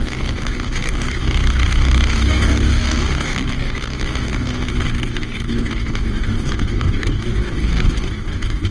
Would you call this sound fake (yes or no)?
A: yes